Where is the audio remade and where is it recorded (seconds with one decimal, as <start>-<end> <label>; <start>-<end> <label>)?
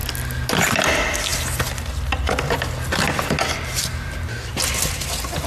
0.0-5.5 recorded